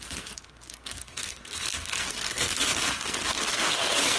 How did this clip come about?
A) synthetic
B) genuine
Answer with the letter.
A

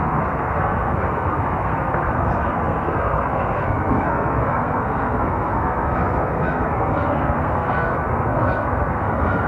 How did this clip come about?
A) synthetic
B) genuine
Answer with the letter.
A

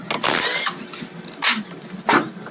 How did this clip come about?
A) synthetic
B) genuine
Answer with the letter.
B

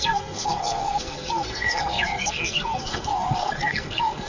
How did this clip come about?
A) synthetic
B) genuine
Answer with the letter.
A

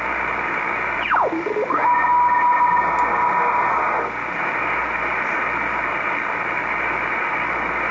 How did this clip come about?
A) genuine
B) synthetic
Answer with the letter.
A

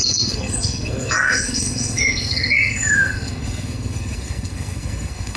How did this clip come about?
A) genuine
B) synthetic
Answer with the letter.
B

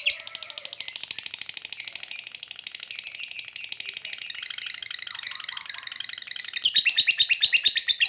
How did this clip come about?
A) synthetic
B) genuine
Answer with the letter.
B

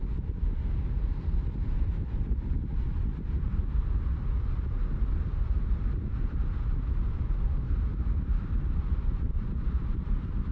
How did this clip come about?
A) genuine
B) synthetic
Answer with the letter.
A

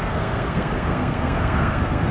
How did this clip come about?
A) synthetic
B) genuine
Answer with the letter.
A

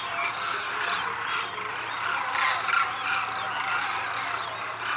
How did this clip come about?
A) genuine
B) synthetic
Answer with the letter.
A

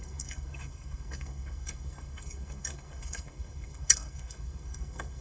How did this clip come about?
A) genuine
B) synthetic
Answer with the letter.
B